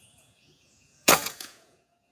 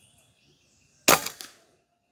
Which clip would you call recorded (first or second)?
second